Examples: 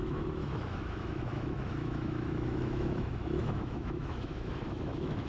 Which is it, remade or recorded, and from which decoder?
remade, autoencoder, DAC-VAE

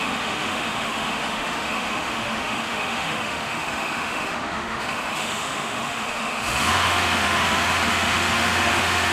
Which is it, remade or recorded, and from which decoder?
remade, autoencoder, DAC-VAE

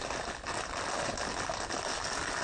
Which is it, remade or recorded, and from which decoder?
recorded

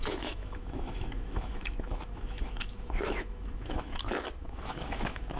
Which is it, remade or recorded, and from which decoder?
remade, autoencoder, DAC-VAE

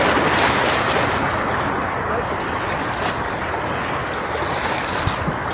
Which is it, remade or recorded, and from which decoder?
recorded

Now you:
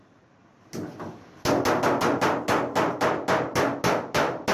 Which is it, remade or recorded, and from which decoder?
recorded